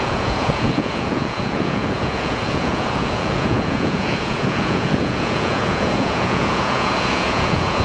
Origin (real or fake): fake